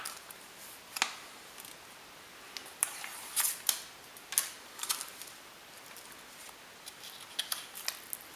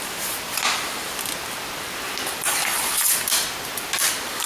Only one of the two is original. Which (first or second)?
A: first